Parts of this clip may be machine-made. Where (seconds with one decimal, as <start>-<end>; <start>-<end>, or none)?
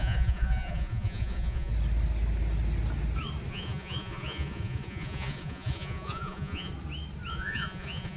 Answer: 0.0-1.7; 3.5-6.7; 7.3-8.2